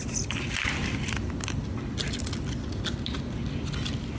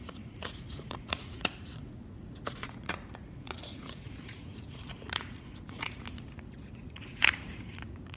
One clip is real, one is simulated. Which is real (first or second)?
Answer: first